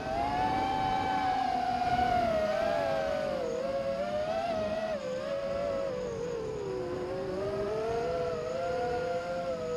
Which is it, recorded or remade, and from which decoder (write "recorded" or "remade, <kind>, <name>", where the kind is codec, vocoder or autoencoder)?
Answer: recorded